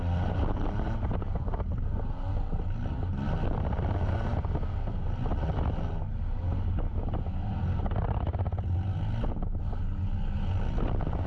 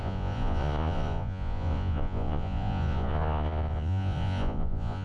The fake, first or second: second